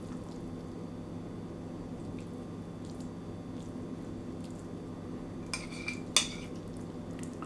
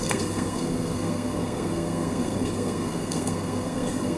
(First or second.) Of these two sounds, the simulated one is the second